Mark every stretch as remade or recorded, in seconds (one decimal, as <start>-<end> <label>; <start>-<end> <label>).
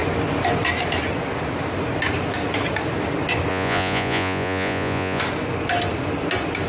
0.0-3.5 recorded; 3.5-5.2 remade; 5.2-6.7 recorded